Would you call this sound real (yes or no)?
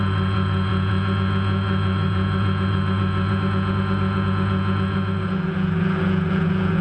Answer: no